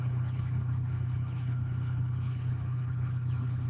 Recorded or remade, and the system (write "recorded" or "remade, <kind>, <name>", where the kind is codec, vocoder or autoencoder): remade, codec, HILCodec